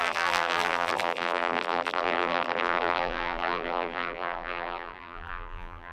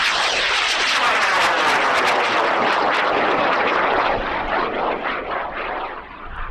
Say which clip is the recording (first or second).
second